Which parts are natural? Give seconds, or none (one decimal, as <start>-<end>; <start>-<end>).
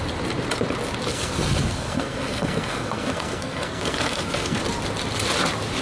0.0-1.1; 4.6-5.8